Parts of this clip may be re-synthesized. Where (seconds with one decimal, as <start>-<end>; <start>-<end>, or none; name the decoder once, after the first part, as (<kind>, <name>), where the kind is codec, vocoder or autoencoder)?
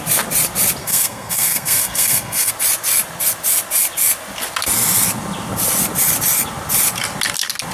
0.8-2.5 (codec, SNAC)